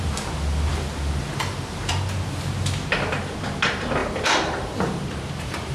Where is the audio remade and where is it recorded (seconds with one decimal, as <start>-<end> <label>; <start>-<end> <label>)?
0.0-4.0 recorded; 4.0-5.7 remade